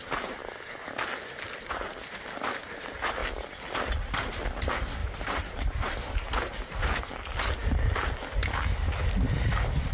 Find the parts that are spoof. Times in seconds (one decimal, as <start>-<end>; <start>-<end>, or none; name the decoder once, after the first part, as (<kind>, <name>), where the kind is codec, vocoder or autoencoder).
5.0-6.1 (vocoder, BigVGAN v2)